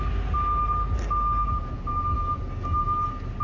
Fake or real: real